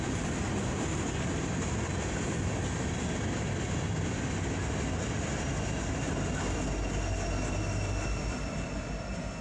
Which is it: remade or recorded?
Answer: recorded